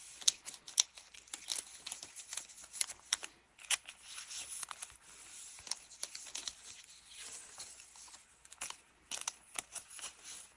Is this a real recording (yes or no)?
no